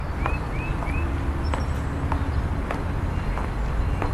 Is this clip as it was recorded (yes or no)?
yes